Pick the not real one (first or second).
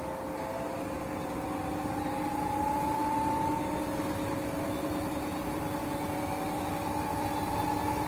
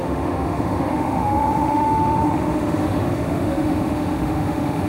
second